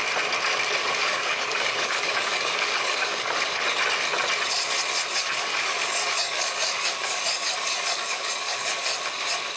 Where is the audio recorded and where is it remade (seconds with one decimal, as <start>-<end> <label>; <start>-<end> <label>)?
0.0-0.8 recorded; 0.8-3.6 remade; 3.6-5.2 recorded; 5.2-8.9 remade; 8.9-9.6 recorded